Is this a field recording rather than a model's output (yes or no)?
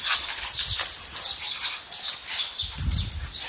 yes